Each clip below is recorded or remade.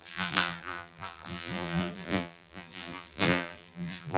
remade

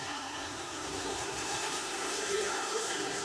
remade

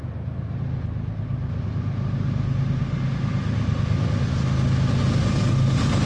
recorded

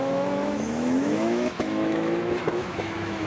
remade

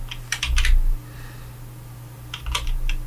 recorded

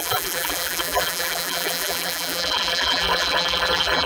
remade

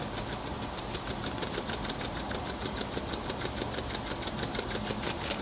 recorded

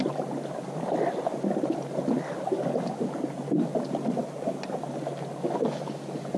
recorded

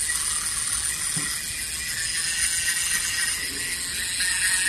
recorded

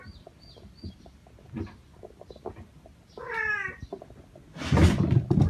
recorded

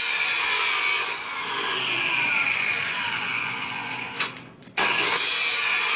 remade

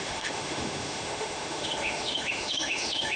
remade